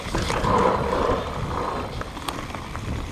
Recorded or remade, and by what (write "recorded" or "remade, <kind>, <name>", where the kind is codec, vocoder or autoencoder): recorded